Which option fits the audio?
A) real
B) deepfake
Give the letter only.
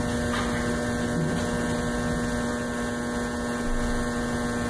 A